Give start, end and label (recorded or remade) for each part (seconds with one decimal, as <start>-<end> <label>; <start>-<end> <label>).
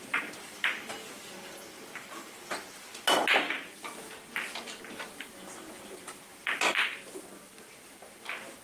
0.0-8.6 recorded